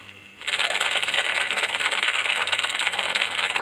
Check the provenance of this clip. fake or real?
fake